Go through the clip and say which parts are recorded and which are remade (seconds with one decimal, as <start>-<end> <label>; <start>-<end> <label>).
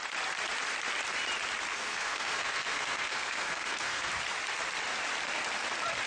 0.0-1.7 recorded; 1.7-4.1 remade; 4.1-6.1 recorded